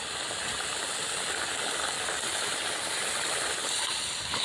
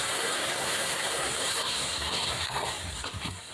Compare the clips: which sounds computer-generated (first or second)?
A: second